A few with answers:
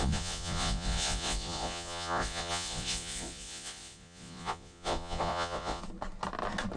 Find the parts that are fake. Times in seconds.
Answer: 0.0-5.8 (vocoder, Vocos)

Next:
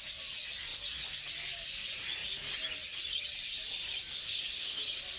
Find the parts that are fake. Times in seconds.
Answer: 4.2-4.8 (codec, SNAC)

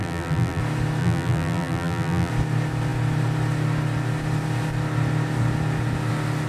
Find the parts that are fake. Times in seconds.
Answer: 0.0-0.6 (vocoder, BigVGAN v2); 1.0-2.3

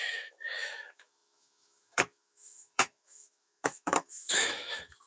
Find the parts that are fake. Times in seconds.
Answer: 0.0-5.1 (autoencoder, DAC-VAE)

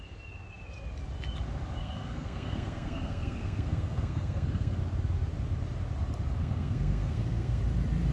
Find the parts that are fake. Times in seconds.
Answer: 1.8-4.8 (codec, SNAC); 6.4-7.6